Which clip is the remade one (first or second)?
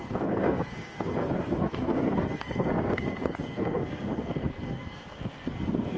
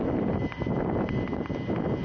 first